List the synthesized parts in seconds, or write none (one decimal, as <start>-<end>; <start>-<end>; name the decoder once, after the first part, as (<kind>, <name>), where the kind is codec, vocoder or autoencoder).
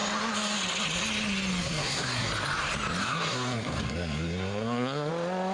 1.6-2.3 (codec, SNAC); 3.0-5.1